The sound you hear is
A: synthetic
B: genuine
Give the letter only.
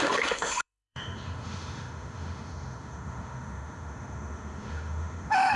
A